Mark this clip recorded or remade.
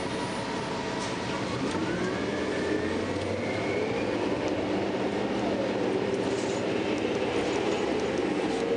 recorded